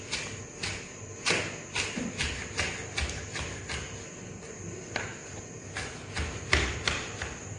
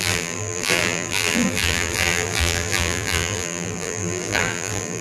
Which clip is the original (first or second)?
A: first